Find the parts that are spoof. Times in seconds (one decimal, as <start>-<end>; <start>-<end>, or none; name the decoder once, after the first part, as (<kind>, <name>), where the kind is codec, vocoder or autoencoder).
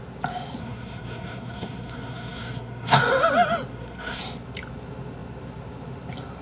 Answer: 0.6-3.0 (codec, SNAC); 3.7-4.2